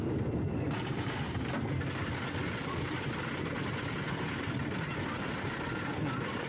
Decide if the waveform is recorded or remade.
recorded